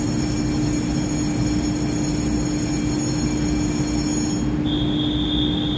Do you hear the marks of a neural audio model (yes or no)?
no